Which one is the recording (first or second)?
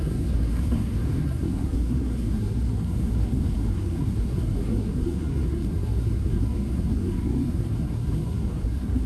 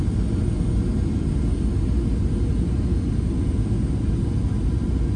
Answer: second